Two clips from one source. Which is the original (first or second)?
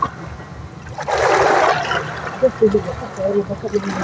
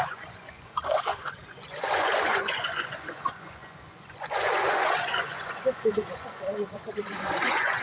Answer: first